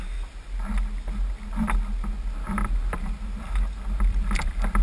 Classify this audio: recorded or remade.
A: recorded